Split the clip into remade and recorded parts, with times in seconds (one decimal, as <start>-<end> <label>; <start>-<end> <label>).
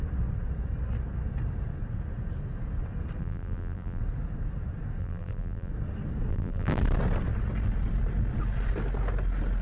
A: 0.0-3.2 recorded; 3.2-4.0 remade; 4.0-5.0 recorded; 5.0-5.7 remade; 5.7-6.3 recorded; 6.3-6.8 remade; 6.8-9.6 recorded